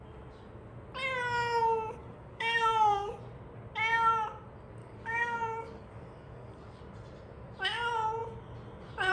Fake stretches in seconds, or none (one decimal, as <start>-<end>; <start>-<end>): 2.0-3.1; 4.8-6.8